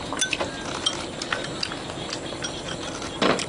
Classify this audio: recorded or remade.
recorded